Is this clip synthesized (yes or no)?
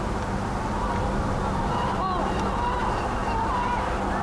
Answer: no